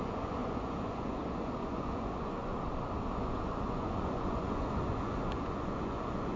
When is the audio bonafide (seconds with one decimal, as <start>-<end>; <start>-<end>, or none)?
2.5-3.1